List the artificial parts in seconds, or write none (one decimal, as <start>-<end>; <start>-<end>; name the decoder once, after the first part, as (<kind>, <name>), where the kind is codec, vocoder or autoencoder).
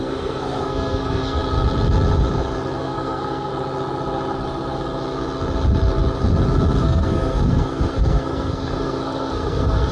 0.0-1.4 (codec, SNAC); 2.8-3.5; 6.8-9.9